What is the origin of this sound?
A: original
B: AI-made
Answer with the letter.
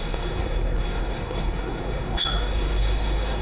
B